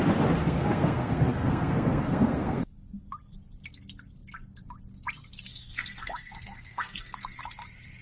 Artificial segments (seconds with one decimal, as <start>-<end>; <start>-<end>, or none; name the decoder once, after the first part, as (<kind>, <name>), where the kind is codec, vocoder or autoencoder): 0.4-2.7 (codec, SNAC); 5.5-7.4